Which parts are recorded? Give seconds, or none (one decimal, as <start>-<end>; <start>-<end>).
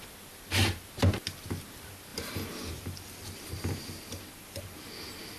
0.0-5.4